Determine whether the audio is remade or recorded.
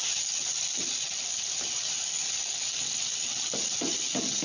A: recorded